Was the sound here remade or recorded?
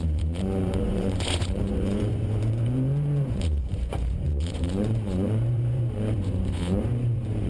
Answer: remade